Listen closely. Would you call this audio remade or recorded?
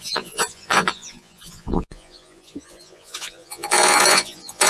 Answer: remade